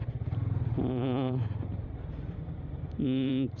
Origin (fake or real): fake